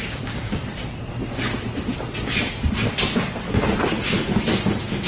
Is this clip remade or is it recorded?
recorded